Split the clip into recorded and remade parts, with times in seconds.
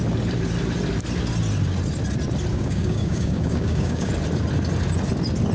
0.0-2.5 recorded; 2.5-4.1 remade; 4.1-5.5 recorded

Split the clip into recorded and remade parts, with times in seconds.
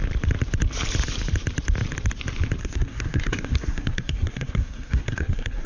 0.0-2.6 recorded; 2.6-5.7 remade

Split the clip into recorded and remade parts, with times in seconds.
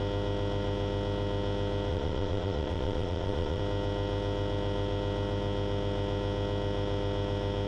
0.0-1.9 recorded; 1.9-3.6 remade; 3.6-7.7 recorded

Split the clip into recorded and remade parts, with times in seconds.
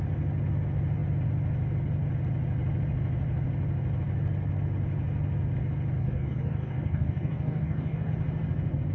0.0-6.0 recorded; 6.0-8.1 remade; 8.1-8.9 recorded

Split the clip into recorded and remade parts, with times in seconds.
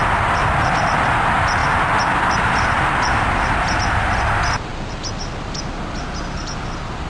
0.0-7.1 recorded